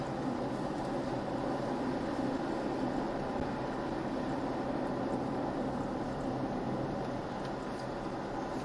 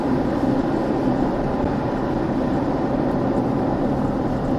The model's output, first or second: second